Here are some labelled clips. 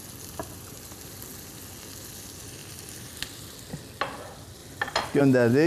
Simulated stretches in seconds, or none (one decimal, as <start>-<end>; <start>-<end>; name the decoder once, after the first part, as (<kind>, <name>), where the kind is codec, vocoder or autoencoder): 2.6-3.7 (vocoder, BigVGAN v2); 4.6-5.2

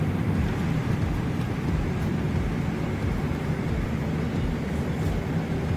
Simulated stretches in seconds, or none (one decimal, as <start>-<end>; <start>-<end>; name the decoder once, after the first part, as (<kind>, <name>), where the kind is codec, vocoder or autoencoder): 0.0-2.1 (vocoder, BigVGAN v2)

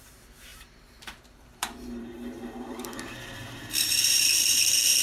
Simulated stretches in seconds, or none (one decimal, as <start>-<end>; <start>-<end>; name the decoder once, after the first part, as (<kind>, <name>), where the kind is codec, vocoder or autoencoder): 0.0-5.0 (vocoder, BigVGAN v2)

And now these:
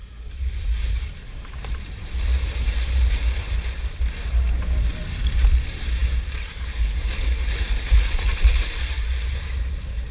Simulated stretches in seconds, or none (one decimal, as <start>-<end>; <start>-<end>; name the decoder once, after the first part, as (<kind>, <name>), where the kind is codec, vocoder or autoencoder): 0.0-10.1 (vocoder, BigVGAN v2)

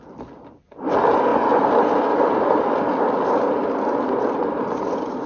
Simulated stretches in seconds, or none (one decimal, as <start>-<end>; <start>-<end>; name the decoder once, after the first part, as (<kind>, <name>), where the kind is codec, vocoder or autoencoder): 0.0-5.3 (vocoder, BigVGAN v2)

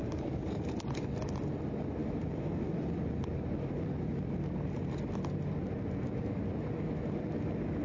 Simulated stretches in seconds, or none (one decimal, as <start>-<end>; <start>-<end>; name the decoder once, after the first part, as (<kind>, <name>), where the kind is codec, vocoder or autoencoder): 0.0-1.4 (vocoder, BigVGAN v2); 2.0-5.8

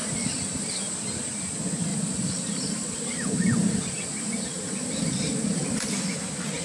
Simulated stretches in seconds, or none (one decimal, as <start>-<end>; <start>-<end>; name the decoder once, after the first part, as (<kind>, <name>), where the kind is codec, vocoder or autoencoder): 0.0-0.9 (vocoder, BigVGAN v2); 1.9-5.9